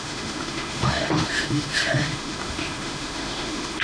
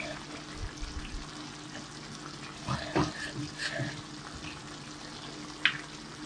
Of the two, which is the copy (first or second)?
first